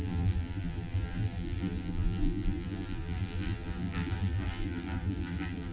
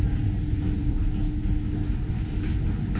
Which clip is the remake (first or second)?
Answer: first